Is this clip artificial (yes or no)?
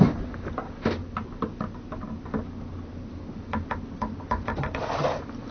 no